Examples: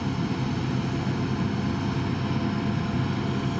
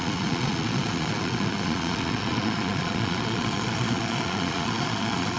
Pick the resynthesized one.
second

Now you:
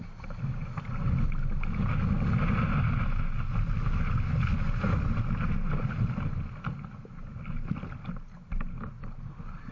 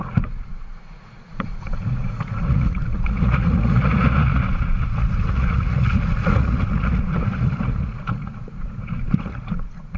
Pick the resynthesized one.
second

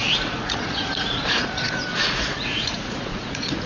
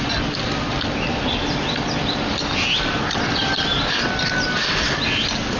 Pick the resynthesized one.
first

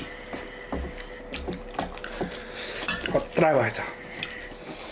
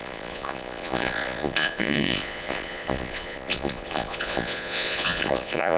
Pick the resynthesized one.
second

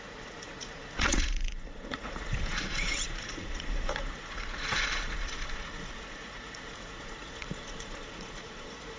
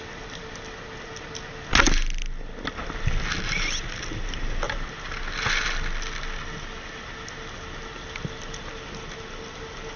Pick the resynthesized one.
first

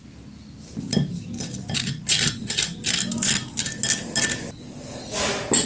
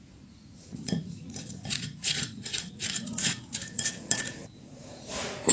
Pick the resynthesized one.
second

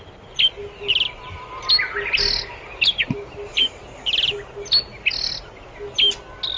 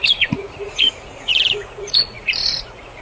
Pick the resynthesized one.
second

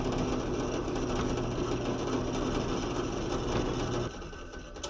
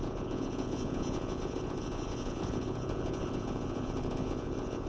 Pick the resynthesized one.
second